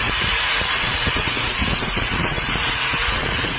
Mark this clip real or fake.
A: fake